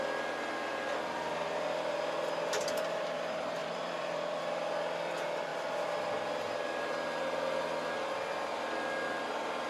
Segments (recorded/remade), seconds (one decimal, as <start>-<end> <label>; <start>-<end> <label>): 0.0-3.6 recorded; 3.6-4.4 remade; 4.4-9.7 recorded